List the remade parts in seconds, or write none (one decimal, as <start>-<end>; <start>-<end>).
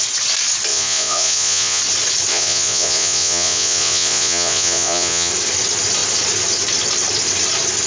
0.7-1.8; 2.3-5.3